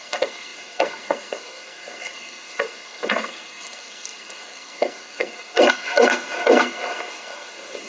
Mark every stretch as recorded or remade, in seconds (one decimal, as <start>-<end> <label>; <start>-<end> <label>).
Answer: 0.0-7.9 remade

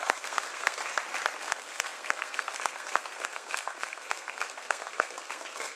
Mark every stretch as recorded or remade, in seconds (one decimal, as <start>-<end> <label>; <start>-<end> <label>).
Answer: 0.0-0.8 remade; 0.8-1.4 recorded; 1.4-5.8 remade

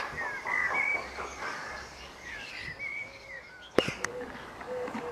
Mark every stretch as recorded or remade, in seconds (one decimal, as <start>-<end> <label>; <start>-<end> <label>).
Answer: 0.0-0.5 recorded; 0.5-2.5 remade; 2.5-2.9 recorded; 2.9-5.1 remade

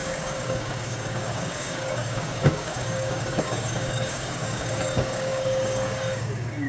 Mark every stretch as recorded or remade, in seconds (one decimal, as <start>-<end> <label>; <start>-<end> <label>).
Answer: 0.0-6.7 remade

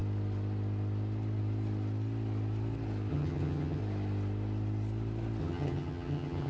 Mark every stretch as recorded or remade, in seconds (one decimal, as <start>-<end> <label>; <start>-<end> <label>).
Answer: 0.0-3.1 recorded; 3.1-3.8 remade; 3.8-5.4 recorded; 5.4-6.5 remade

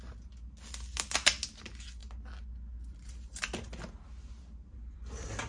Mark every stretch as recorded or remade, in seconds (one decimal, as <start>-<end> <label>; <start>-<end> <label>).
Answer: 0.0-5.5 recorded

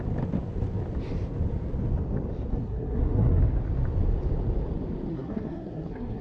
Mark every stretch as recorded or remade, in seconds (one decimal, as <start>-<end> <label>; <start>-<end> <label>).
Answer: 0.0-2.5 recorded; 2.5-3.4 remade; 3.4-5.1 recorded; 5.1-6.2 remade